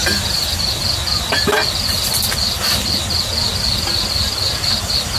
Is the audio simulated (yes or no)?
no